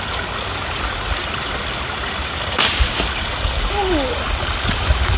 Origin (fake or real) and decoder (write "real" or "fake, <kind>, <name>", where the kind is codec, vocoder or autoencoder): real